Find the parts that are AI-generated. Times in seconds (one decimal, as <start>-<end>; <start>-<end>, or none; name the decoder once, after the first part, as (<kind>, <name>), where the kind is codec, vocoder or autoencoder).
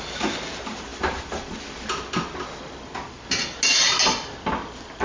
none